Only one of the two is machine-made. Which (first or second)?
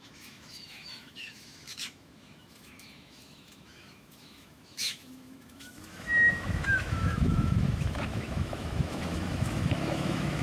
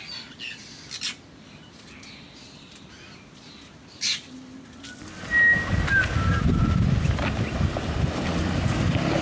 first